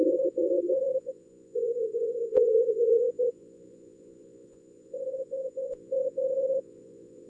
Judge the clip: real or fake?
fake